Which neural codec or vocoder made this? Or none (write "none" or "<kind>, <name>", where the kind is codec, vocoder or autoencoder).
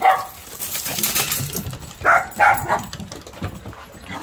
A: none